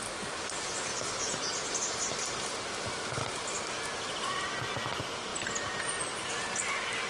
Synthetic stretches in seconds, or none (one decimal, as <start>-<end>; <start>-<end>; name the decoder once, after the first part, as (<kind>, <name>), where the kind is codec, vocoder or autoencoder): none